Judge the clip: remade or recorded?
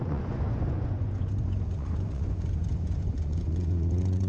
remade